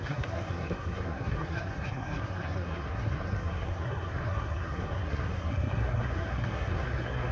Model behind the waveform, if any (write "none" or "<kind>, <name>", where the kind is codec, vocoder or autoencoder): codec, SNAC